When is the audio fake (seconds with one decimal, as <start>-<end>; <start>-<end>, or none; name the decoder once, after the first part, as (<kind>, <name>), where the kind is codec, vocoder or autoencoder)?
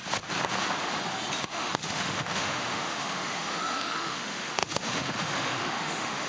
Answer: 1.4-6.3 (autoencoder, DAC-VAE)